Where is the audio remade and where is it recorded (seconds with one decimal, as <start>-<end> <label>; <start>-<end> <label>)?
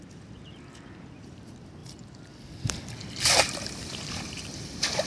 0.0-1.8 recorded; 1.8-5.1 remade